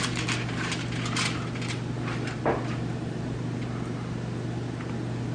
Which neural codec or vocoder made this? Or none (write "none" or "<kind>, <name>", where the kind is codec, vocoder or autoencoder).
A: none